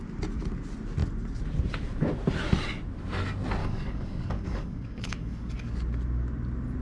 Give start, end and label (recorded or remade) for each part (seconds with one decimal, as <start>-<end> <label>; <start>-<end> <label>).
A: 0.0-3.6 recorded; 3.6-5.7 remade; 5.7-6.8 recorded

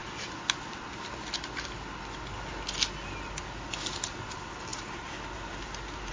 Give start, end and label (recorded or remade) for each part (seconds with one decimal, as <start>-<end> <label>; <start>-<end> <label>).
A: 0.0-6.1 recorded

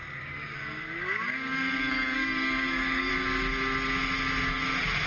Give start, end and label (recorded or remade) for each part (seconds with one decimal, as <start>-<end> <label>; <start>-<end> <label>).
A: 0.0-3.1 remade; 3.1-5.1 recorded

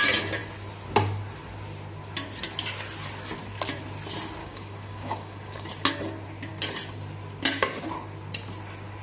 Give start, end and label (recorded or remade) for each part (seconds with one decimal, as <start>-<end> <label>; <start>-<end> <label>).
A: 0.0-4.4 recorded; 4.4-5.7 remade; 5.7-9.0 recorded